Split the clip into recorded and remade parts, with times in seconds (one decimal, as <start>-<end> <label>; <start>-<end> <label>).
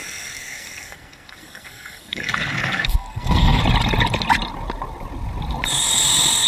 0.0-3.6 remade; 3.6-6.5 recorded